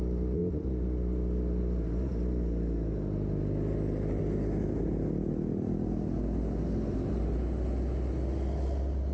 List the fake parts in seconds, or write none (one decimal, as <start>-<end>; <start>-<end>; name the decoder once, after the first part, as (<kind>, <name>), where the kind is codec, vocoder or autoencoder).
none